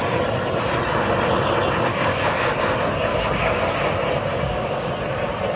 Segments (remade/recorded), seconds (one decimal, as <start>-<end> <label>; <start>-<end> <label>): 0.0-1.9 recorded; 1.9-2.5 remade; 2.5-3.1 recorded; 3.1-3.6 remade; 3.6-4.3 recorded; 4.3-4.9 remade; 4.9-5.6 recorded